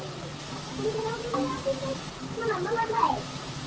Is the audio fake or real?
real